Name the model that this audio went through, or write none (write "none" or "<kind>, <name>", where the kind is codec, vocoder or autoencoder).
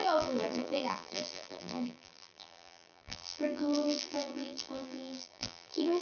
vocoder, BigVGAN v2